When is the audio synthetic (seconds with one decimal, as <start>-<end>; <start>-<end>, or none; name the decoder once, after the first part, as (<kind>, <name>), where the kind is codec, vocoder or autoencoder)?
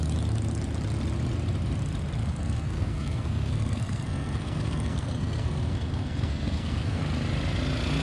2.2-7.0 (codec, SNAC)